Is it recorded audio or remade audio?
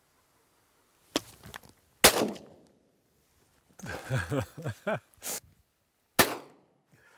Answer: recorded